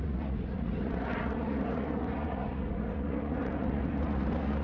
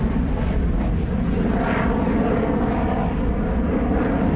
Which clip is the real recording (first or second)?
second